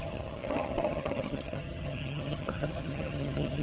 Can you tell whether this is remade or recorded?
remade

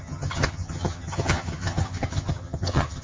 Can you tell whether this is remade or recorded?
remade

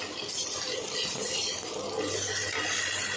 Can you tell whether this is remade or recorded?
recorded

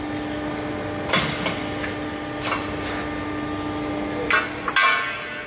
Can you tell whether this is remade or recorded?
recorded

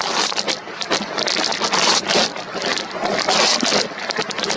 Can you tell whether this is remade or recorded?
recorded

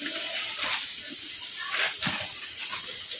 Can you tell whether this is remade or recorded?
recorded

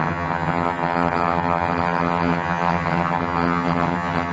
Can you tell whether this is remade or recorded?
remade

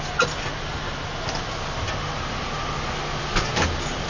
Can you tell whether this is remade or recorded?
recorded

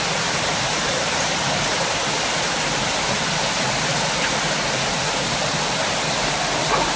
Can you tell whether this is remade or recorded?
recorded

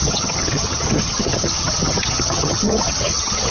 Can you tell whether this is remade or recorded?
remade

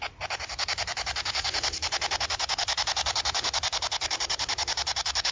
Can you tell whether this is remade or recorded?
recorded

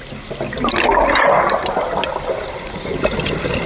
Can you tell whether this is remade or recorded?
recorded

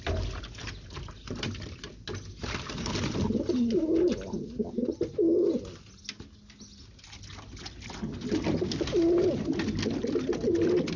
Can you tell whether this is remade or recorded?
recorded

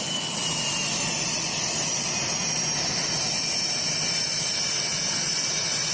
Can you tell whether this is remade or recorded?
recorded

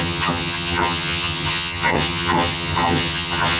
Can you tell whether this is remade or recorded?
remade